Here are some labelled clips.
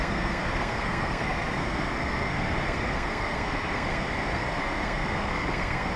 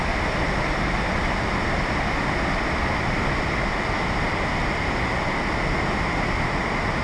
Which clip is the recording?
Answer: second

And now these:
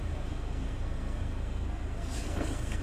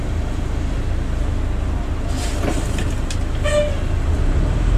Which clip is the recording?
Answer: second